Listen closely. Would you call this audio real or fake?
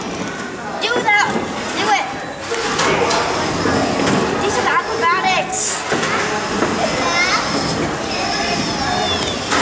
real